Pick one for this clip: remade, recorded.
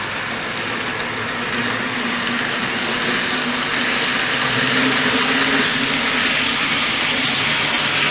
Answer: recorded